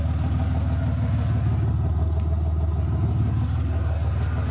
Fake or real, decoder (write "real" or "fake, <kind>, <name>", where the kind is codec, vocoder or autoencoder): real